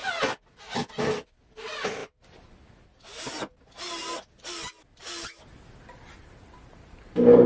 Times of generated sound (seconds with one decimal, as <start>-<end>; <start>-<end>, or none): none

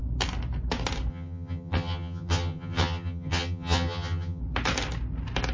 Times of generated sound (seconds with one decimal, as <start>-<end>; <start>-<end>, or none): 1.1-4.4